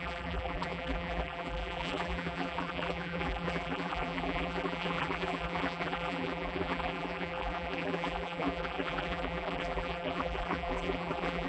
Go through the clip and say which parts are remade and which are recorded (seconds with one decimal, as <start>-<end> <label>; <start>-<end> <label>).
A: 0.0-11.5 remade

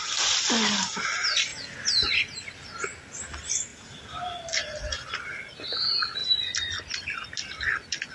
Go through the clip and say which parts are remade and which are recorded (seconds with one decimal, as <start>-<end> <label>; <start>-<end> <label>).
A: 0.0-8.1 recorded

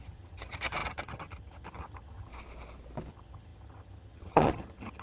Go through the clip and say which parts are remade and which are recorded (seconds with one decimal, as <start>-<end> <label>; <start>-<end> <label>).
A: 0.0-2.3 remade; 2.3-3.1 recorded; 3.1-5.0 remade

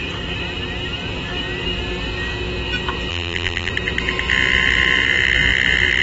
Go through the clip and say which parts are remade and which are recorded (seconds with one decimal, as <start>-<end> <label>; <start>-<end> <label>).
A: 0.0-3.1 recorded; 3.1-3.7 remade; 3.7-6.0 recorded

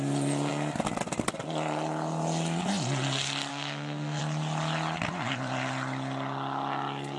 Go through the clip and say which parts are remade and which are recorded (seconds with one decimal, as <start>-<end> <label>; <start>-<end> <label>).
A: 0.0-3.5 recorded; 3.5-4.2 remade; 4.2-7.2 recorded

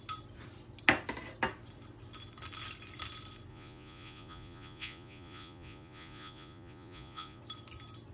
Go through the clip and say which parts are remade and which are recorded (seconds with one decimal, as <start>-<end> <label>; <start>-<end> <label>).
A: 0.0-3.5 recorded; 3.5-7.4 remade; 7.4-8.1 recorded

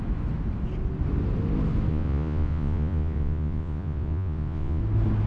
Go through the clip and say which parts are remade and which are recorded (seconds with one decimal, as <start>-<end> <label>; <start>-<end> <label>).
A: 0.0-1.9 recorded; 1.9-4.8 remade; 4.8-5.3 recorded